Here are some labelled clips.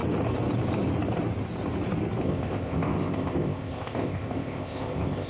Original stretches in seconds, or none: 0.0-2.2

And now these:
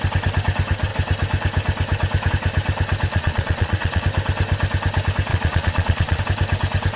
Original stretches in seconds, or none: 0.0-3.1; 4.0-5.3; 6.2-7.0

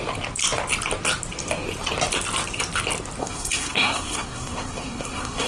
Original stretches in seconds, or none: 0.0-3.2

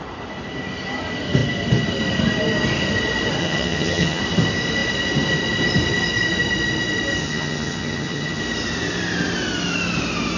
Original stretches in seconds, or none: 0.0-3.4; 4.2-7.2; 8.4-10.4

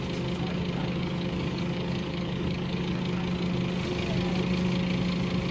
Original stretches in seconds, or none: 0.0-0.8; 3.0-5.5